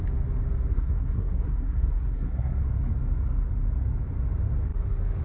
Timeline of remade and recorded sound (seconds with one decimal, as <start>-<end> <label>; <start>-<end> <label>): 0.0-0.7 recorded; 0.7-2.6 remade; 2.6-5.2 recorded

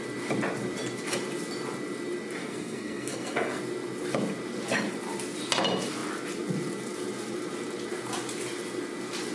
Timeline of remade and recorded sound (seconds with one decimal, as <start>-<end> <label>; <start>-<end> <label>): 0.0-2.4 recorded; 2.4-3.6 remade; 3.6-9.3 recorded